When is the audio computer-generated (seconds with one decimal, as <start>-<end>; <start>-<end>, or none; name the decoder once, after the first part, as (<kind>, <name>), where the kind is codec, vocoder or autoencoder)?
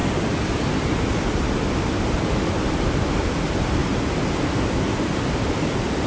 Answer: none